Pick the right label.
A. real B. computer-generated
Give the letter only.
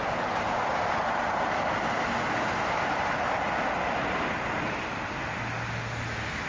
A